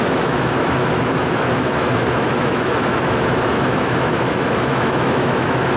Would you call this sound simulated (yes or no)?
yes